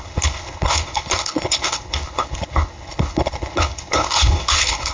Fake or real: fake